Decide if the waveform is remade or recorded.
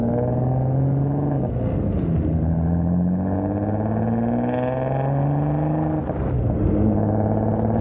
recorded